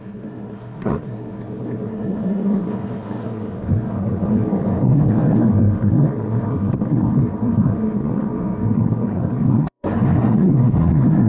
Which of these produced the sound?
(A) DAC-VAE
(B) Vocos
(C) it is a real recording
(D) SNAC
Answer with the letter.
D